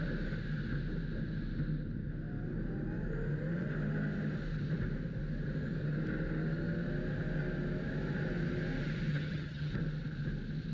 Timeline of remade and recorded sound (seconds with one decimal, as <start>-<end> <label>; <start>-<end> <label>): 0.0-9.1 recorded; 9.1-9.7 remade; 9.7-10.7 recorded